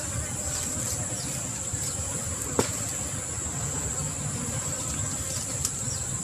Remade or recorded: recorded